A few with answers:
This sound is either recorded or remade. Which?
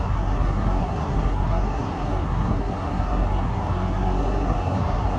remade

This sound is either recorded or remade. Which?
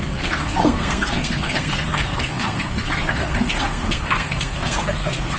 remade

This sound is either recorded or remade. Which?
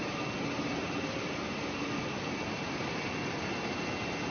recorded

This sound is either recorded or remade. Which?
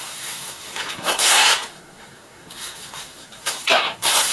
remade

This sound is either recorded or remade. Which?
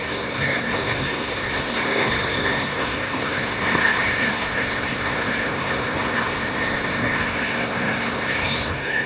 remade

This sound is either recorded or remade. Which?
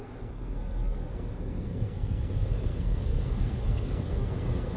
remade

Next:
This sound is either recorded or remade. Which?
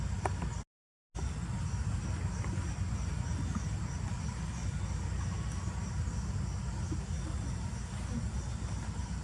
recorded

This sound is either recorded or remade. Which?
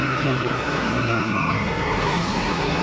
remade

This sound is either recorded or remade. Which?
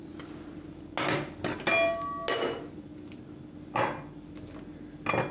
recorded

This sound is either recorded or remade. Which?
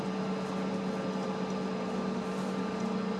recorded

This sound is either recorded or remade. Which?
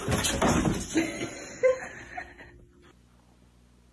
recorded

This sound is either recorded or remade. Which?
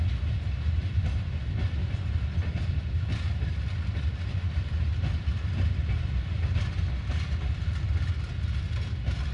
recorded